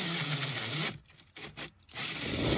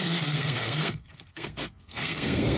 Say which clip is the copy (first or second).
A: second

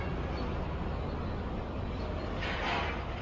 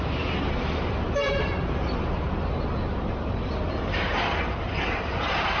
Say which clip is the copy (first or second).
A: second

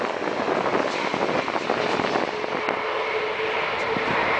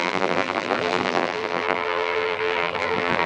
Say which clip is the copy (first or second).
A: second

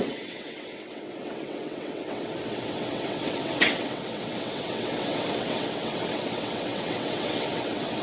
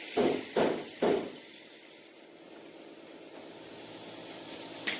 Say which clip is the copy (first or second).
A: first